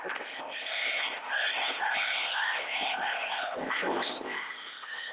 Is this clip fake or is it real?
fake